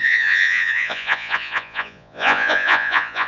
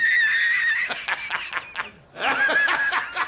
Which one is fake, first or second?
first